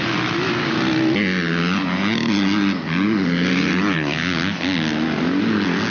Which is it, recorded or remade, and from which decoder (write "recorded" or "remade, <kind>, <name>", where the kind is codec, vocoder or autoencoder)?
recorded